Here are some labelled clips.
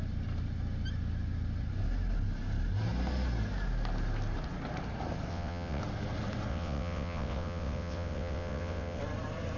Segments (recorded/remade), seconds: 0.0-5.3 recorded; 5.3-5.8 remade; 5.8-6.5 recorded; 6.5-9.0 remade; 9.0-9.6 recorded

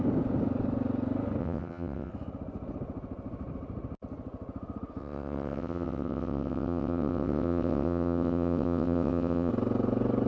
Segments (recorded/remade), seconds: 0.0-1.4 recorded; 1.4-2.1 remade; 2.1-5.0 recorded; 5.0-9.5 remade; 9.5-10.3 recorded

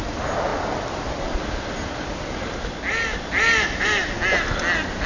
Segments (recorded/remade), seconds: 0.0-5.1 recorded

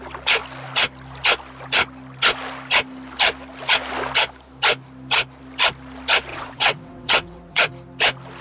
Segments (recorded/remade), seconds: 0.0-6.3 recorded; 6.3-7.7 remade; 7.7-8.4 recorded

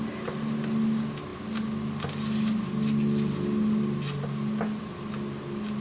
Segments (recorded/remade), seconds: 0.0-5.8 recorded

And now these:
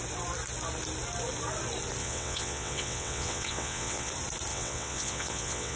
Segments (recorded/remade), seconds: 0.0-2.0 recorded; 2.0-4.1 remade; 4.1-4.5 recorded; 4.5-5.8 remade

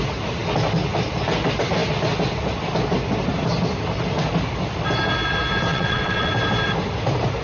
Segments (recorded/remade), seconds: 0.0-5.7 recorded; 5.7-6.3 remade; 6.3-7.4 recorded